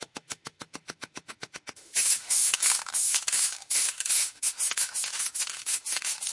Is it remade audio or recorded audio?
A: remade